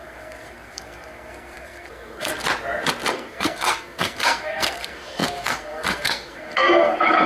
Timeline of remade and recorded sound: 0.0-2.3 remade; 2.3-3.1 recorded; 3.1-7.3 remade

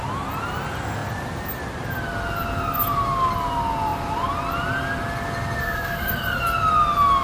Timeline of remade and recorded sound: 0.0-5.6 recorded; 5.6-6.4 remade; 6.4-7.2 recorded

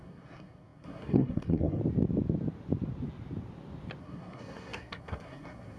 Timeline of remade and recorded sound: 0.0-1.8 remade; 1.8-4.0 recorded; 4.0-5.8 remade

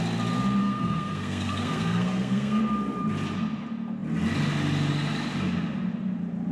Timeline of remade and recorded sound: 0.0-0.6 recorded; 0.6-2.6 remade; 2.6-6.5 recorded